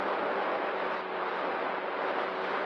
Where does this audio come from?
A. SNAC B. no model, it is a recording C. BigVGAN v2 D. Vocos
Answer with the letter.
B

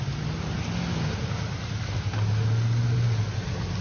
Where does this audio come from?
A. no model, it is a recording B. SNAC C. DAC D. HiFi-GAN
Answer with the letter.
A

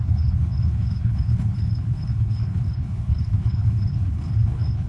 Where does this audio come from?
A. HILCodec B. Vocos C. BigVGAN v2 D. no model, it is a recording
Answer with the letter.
A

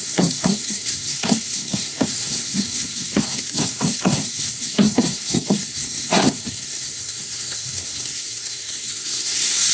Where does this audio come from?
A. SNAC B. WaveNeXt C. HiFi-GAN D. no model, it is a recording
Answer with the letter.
A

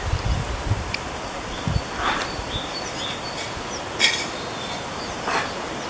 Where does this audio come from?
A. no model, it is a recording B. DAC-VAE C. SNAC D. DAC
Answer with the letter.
A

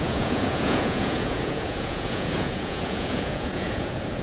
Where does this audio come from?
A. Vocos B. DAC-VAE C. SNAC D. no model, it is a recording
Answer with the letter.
A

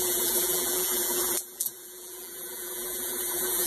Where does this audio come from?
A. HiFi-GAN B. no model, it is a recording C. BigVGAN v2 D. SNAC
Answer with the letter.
C